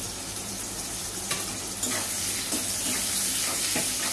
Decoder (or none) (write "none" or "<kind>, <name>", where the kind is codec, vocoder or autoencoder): vocoder, BigVGAN v2